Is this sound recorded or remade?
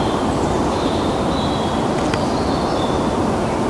recorded